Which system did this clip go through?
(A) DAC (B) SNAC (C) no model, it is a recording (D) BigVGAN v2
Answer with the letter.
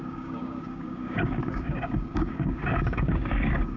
A